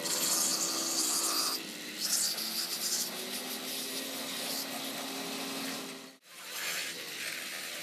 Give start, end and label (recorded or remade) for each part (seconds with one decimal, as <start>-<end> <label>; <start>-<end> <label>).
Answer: 0.0-6.8 recorded; 6.8-7.8 remade